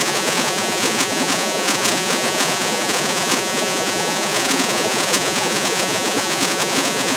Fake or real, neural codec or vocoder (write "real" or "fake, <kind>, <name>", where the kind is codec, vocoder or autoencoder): fake, vocoder, Vocos